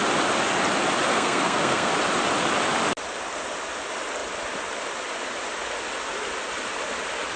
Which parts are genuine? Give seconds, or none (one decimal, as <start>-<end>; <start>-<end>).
0.0-1.1; 1.9-7.4